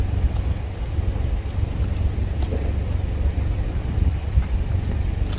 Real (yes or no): yes